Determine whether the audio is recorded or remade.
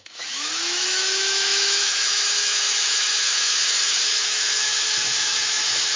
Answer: remade